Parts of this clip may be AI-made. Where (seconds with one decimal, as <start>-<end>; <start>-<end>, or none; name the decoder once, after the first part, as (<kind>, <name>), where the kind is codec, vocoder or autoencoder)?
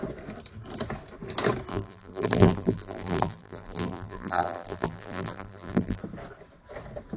1.7-6.0 (vocoder, BigVGAN v2)